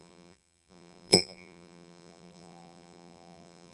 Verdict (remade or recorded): remade